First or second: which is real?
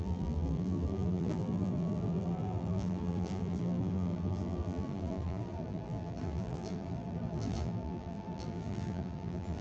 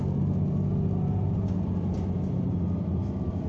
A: second